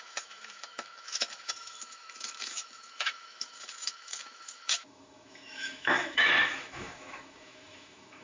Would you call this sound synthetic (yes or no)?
yes